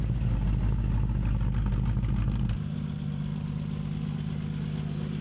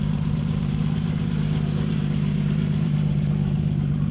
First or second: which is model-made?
second